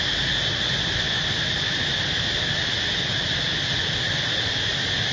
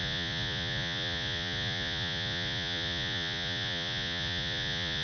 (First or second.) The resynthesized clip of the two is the second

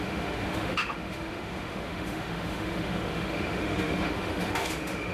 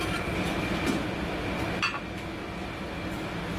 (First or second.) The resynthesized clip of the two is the first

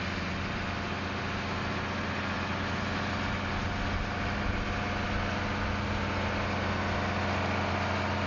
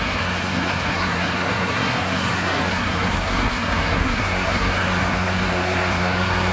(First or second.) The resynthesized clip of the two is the second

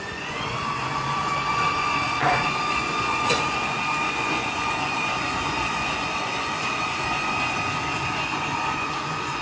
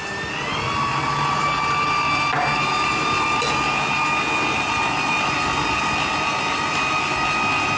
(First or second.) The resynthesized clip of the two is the first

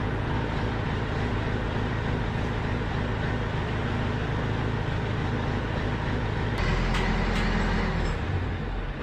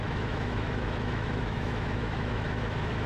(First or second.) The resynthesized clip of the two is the second